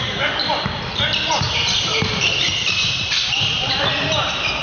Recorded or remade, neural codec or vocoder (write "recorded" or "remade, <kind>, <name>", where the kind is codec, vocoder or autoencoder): remade, vocoder, BigVGAN v2